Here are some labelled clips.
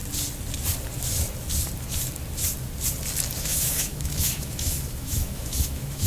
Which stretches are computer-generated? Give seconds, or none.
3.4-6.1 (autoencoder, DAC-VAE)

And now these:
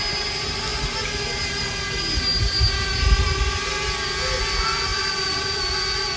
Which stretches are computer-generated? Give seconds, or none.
4.9-5.7 (vocoder, BigVGAN v2)

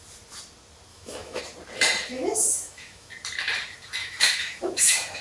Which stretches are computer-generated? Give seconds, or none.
0.9-1.4 (autoencoder, DAC-VAE); 2.1-3.1; 4.0-5.2

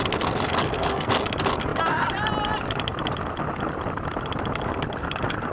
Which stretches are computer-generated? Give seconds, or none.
0.6-1.1 (codec, SNAC)

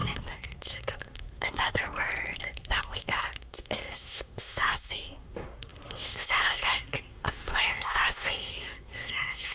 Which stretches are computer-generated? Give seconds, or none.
0.0-9.5 (codec, SNAC)

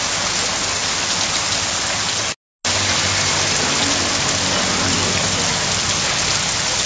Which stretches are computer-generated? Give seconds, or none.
none

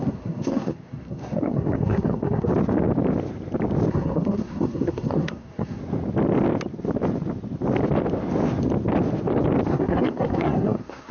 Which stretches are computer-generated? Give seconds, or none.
0.0-2.5 (codec, SNAC); 3.9-5.8; 9.7-11.1

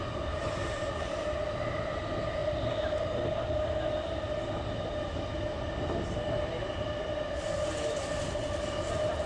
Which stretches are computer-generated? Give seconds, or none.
none